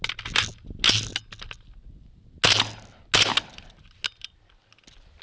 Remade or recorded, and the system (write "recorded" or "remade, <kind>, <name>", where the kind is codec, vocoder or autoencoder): recorded